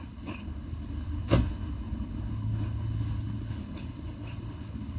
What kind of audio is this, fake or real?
fake